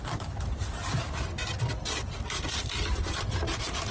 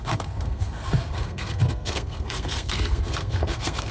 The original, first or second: first